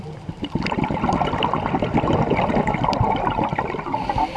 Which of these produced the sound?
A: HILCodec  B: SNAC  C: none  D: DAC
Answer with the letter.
C